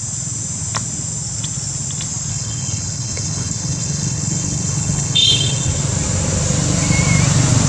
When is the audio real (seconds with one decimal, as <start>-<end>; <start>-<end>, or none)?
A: 0.0-2.3; 5.7-7.7